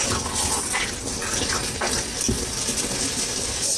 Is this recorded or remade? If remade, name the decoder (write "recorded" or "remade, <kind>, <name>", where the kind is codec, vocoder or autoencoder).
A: recorded